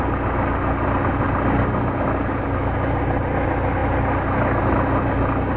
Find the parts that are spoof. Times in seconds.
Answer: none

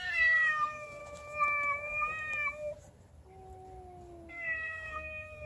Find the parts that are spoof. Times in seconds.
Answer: 0.0-1.0 (codec, SNAC); 4.3-5.5

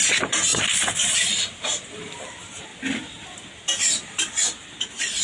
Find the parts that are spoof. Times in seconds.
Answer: none

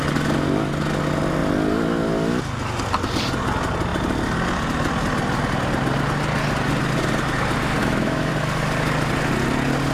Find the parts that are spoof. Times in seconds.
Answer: 7.8-8.3 (autoencoder, DAC-VAE)